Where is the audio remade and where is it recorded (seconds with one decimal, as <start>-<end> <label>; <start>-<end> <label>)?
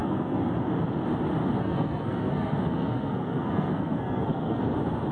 0.0-0.5 remade; 0.5-1.6 recorded; 1.6-4.6 remade; 4.6-5.1 recorded